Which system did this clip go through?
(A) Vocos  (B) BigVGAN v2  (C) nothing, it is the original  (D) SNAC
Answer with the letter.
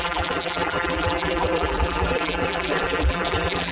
B